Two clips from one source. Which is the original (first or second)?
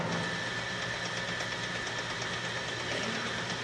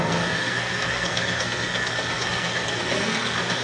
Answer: first